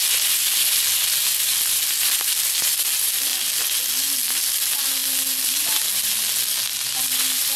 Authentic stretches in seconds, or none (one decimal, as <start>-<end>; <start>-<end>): 0.0-7.6